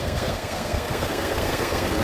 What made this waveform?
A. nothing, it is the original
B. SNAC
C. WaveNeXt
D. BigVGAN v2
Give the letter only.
B